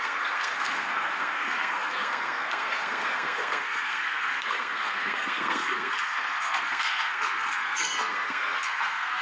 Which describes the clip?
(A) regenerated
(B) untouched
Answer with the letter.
A